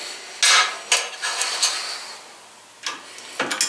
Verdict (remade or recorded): recorded